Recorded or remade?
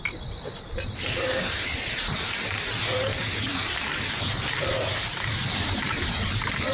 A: recorded